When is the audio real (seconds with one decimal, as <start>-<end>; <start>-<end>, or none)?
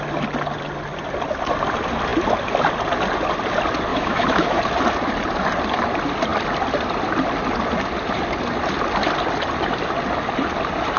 0.0-3.9; 4.6-11.0